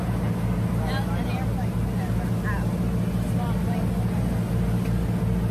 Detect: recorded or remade recorded